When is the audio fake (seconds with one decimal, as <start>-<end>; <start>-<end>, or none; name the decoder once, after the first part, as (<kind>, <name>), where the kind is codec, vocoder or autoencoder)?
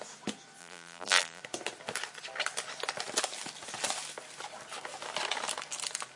0.6-1.4 (vocoder, BigVGAN v2)